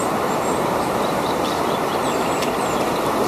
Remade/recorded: remade